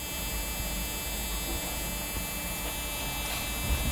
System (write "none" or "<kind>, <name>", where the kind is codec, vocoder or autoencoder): none